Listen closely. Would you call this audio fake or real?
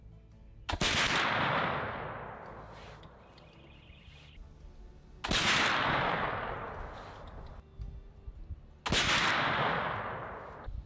real